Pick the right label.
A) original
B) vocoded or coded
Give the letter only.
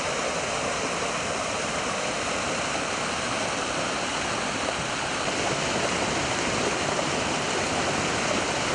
A